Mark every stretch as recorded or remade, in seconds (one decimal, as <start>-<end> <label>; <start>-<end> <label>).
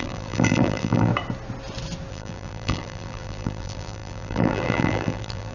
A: 0.0-1.1 remade; 1.1-2.1 recorded; 2.1-5.5 remade